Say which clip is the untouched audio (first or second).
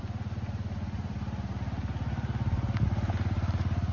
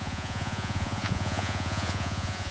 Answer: first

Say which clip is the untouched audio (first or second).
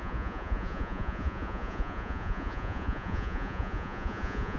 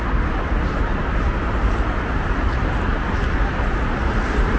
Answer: second